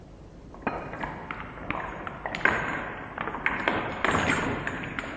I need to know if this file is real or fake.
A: real